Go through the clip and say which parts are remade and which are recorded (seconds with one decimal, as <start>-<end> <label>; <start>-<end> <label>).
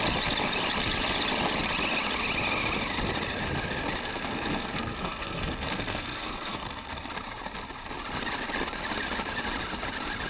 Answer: 0.0-4.0 recorded; 4.0-7.1 remade; 7.1-10.3 recorded